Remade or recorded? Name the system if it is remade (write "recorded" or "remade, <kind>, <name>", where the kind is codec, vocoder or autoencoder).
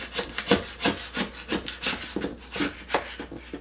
recorded